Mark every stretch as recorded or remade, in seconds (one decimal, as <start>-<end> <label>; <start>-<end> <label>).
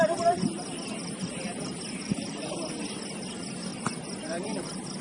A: 0.0-1.0 recorded; 1.0-2.5 remade; 2.5-3.7 recorded; 3.7-5.0 remade